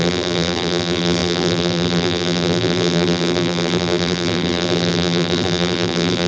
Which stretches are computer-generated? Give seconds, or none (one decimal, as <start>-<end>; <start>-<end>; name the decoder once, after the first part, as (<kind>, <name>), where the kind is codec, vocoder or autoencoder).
0.0-6.3 (vocoder, BigVGAN v2)